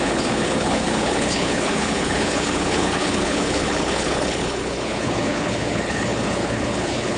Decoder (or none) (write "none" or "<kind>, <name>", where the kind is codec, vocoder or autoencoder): codec, HILCodec